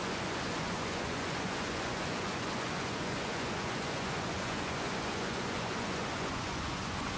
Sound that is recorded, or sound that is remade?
remade